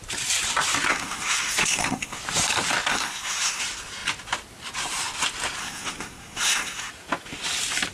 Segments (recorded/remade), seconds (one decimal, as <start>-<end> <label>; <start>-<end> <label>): 0.0-0.9 recorded; 0.9-2.2 remade; 2.2-2.9 recorded; 2.9-3.6 remade; 3.6-5.6 recorded; 5.6-6.9 remade; 6.9-7.9 recorded